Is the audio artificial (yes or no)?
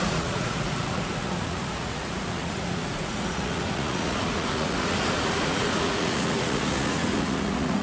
yes